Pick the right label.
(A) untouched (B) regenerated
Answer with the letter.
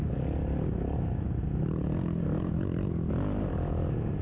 A